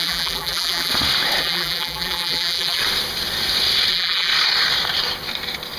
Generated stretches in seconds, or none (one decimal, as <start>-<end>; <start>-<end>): 0.0-0.9; 1.4-2.8; 3.9-4.3

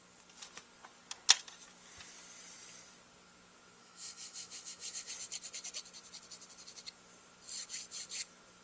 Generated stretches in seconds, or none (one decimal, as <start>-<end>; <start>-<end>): 3.8-5.1